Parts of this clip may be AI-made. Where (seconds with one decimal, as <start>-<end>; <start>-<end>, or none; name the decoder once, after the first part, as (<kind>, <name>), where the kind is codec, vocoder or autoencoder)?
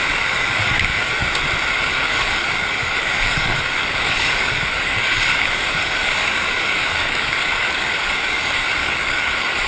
0.0-1.2 (codec, DAC); 1.7-9.7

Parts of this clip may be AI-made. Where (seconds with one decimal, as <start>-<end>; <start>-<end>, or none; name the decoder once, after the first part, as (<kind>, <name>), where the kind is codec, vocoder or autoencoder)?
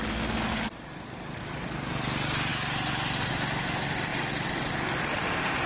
none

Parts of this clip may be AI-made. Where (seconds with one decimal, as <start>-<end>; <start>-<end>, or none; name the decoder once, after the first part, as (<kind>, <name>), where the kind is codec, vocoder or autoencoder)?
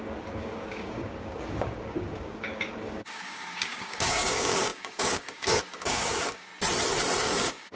0.0-6.5 (codec, DAC); 7.2-7.8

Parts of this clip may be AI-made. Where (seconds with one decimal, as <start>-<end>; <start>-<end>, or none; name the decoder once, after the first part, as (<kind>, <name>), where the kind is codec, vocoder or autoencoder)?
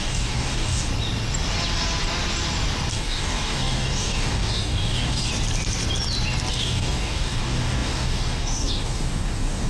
0.0-0.9 (codec, DAC); 2.9-5.3; 6.5-9.7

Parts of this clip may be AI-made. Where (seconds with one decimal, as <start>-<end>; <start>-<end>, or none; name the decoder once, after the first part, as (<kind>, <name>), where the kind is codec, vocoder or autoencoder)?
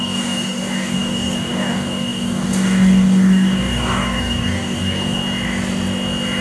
0.0-5.2 (codec, DAC)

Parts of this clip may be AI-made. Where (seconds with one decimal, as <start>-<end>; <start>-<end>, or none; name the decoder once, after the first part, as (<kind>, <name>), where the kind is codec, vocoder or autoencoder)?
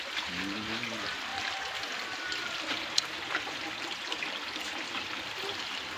none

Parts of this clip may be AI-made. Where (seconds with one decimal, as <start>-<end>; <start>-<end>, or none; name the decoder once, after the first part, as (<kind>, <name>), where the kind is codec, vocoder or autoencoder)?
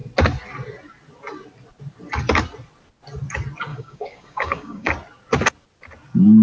3.7-4.9 (codec, DAC)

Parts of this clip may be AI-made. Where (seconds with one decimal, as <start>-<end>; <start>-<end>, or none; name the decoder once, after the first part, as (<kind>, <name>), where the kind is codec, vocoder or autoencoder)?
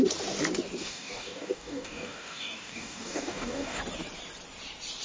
0.8-3.8 (codec, DAC)